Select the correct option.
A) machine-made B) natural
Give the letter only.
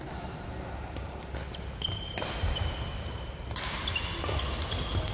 B